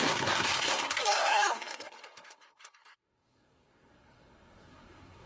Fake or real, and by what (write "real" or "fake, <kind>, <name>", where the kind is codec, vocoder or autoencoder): fake, codec, SNAC